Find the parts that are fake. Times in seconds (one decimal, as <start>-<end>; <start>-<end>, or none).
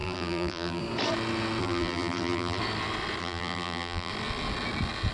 0.0-0.8; 1.6-2.6; 3.2-4.1